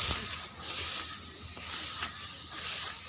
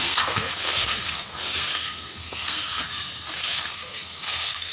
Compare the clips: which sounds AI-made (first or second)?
second